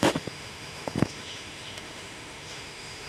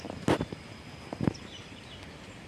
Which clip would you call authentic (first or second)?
second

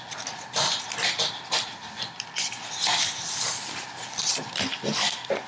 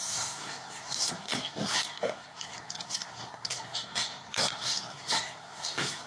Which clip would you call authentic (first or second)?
first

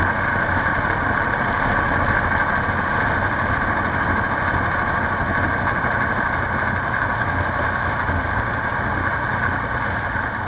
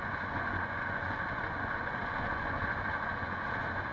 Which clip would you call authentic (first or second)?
first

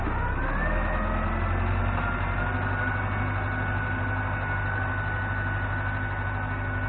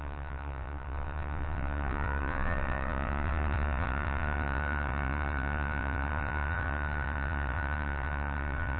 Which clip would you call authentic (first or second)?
first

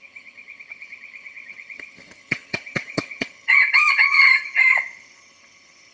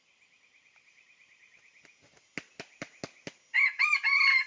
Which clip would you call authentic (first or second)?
second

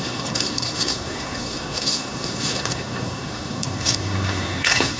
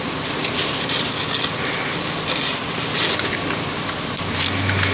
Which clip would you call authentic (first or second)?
second